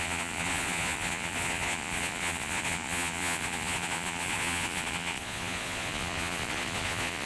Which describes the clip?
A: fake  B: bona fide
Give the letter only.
A